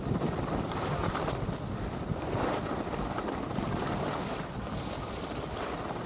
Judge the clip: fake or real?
fake